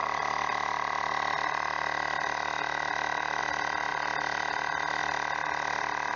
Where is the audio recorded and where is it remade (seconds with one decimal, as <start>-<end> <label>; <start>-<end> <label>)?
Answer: 0.0-6.2 recorded